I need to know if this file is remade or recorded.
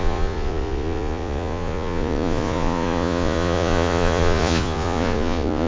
remade